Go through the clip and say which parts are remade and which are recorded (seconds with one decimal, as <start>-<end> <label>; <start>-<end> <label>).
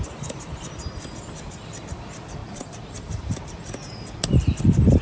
0.0-2.4 recorded; 2.4-3.6 remade; 3.6-5.0 recorded